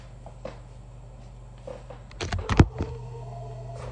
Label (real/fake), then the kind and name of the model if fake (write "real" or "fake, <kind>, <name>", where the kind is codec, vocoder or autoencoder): real